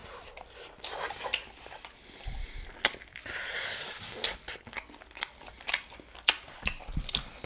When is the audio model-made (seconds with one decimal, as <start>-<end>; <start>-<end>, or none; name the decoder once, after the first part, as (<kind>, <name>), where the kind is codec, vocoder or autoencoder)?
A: none